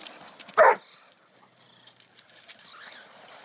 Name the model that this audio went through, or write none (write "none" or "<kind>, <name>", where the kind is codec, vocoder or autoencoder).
none